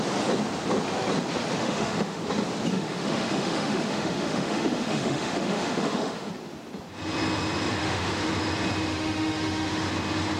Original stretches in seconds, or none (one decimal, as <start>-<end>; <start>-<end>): 0.0-1.6; 2.2-2.7; 6.3-7.8; 8.3-8.9; 9.9-10.4